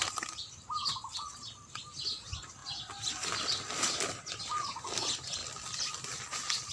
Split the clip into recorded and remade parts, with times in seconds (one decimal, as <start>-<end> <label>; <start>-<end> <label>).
0.0-6.7 recorded